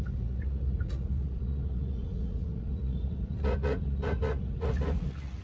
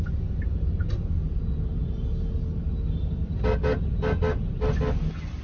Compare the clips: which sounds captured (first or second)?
second